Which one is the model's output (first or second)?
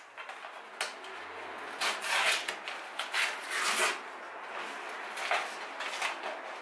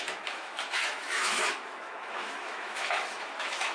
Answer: second